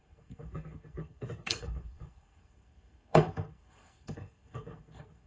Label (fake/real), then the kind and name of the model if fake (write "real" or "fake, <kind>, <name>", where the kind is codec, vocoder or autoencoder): fake, codec, SNAC